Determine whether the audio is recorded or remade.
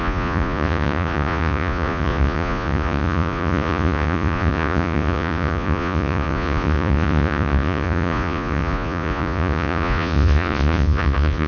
remade